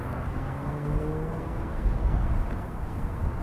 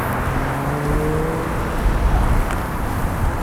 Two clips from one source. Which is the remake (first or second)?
first